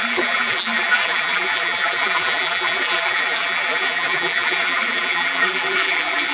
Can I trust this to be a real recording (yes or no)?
no